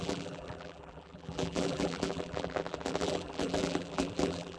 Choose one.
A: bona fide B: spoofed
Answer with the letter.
B